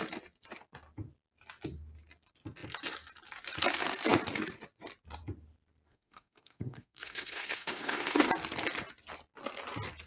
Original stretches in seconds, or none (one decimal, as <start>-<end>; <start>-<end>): 0.0-5.9; 8.3-10.1